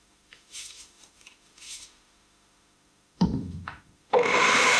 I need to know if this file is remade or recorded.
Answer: remade